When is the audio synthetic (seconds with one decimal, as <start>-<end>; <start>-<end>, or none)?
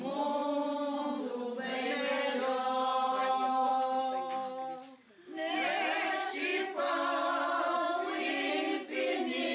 3.2-3.7